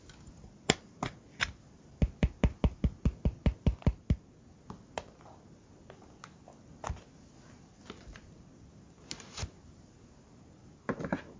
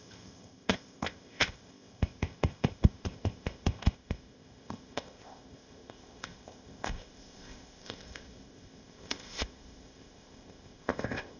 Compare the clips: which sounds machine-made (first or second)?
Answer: second